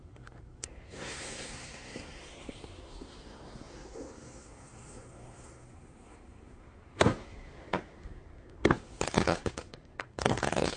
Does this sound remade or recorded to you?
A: remade